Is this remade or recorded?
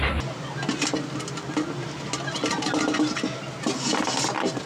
recorded